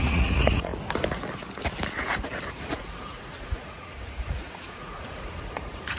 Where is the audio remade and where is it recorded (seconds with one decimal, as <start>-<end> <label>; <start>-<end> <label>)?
0.0-0.7 remade; 0.7-2.5 recorded; 2.5-6.0 remade